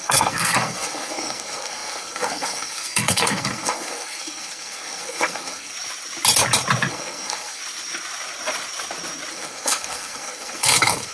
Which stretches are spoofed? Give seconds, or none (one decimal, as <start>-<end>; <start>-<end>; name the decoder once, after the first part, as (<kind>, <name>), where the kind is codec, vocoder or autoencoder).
0.0-5.7 (codec, SNAC); 6.9-7.6; 9.3-11.1